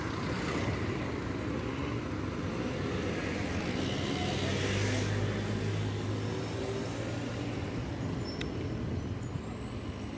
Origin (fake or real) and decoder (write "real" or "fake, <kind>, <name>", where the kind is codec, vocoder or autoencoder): real